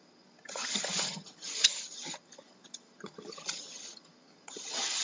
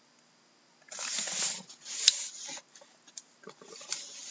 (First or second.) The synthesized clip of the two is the first